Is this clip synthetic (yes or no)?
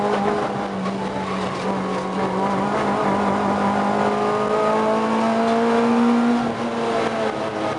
no